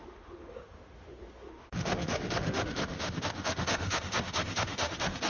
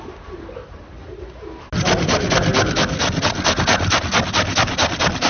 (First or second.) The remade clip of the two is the first